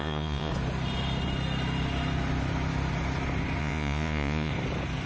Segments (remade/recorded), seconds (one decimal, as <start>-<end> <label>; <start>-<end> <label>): 0.0-0.5 remade; 0.5-3.6 recorded; 3.6-4.5 remade; 4.5-5.1 recorded